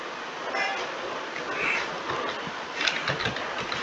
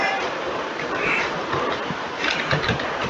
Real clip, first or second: first